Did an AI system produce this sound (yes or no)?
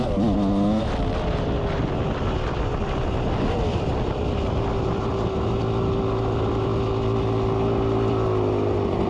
no